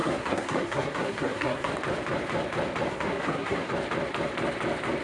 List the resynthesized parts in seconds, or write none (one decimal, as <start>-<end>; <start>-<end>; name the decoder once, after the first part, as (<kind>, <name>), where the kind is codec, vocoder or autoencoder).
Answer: 0.0-1.7 (codec, SNAC); 2.9-3.7